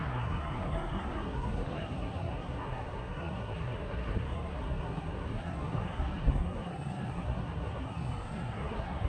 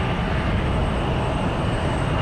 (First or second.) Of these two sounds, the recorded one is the second